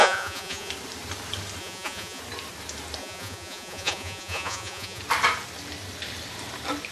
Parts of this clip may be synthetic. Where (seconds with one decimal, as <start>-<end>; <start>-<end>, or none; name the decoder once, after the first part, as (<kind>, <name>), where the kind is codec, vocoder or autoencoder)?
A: 0.0-0.7 (vocoder, Vocos); 1.6-2.2; 3.0-5.0